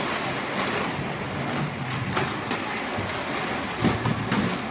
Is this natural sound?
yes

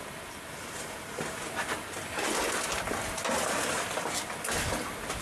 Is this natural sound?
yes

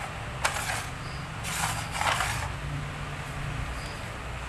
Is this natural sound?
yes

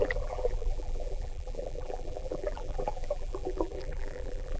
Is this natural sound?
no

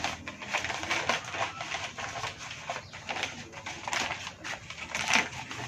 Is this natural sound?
yes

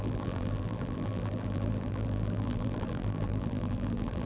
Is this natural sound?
no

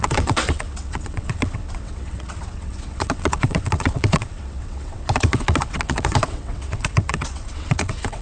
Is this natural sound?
no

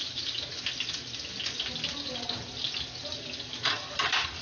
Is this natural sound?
yes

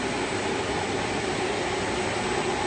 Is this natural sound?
yes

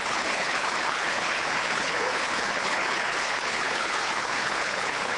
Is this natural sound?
no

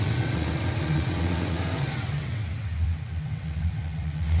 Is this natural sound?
no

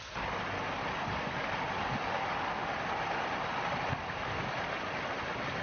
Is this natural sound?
yes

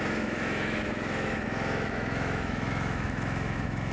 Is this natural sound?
no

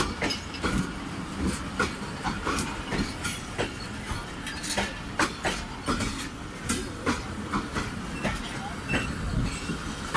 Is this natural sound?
yes